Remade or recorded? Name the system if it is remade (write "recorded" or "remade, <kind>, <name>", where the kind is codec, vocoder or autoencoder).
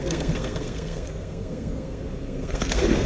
remade, codec, SNAC